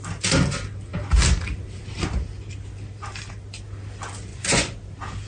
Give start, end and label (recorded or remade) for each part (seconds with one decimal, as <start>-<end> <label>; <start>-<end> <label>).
0.0-4.3 recorded; 4.3-4.8 remade; 4.8-5.3 recorded